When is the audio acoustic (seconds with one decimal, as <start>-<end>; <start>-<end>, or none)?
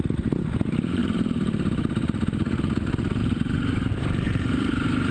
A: 0.0-1.0; 2.8-3.2